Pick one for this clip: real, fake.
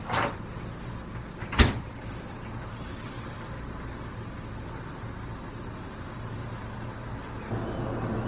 real